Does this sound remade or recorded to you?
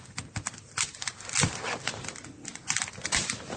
recorded